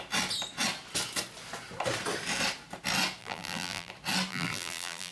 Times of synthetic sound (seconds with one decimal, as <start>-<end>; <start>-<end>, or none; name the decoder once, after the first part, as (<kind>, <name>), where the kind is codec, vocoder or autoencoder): 3.2-3.9 (vocoder, BigVGAN v2); 4.3-5.1